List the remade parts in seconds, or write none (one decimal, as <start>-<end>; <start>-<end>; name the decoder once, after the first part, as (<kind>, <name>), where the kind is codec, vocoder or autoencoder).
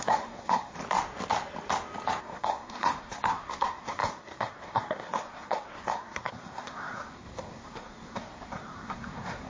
0.0-0.8 (codec, SNAC); 2.2-9.5